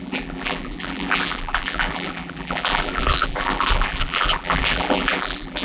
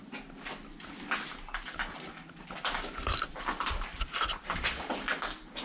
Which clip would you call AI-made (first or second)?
first